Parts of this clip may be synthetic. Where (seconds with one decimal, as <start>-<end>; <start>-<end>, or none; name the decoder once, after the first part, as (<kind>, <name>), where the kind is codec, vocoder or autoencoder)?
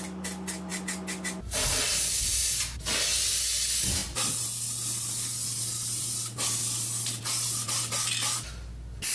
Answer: none